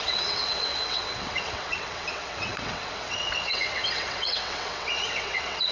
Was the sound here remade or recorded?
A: remade